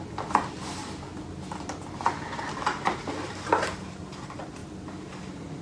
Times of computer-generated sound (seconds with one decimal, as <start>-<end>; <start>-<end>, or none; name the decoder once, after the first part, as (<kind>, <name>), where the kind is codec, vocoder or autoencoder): none